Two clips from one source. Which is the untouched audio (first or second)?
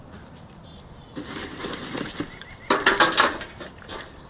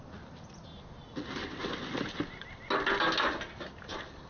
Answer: second